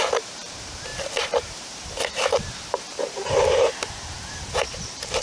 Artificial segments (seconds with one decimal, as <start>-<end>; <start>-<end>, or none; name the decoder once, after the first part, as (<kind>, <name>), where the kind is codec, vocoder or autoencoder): 0.0-5.2 (vocoder, BigVGAN v2)